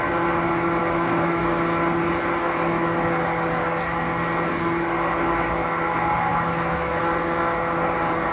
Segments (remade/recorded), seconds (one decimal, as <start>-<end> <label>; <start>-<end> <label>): 0.0-0.8 recorded; 0.8-1.4 remade; 1.4-6.3 recorded; 6.3-7.0 remade; 7.0-8.3 recorded